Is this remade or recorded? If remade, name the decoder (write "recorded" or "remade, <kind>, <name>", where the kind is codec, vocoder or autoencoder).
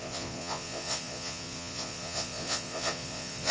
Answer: remade, vocoder, Vocos